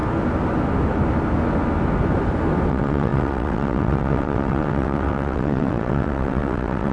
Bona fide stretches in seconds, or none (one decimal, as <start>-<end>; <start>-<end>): 0.0-2.7